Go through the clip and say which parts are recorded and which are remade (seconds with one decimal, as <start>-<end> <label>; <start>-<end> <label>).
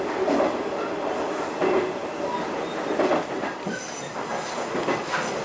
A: 0.0-5.4 recorded